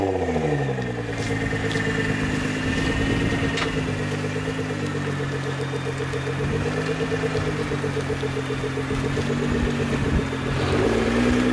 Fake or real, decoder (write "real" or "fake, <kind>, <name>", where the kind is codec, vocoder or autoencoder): real